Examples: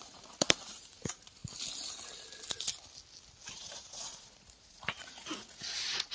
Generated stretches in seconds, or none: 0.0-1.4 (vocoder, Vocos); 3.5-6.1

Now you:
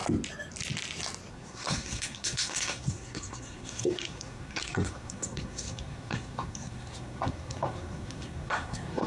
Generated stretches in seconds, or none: 1.3-9.1 (codec, SNAC)

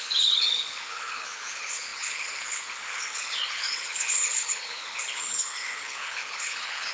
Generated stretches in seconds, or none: 0.0-6.9 (codec, HILCodec)

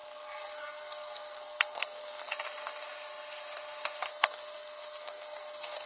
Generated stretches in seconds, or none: 0.0-2.3 (codec, SNAC); 4.1-5.9